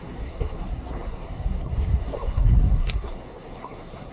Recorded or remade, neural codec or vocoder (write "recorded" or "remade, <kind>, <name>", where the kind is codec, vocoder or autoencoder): remade, codec, SNAC